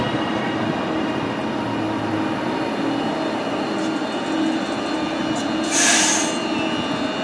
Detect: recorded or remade recorded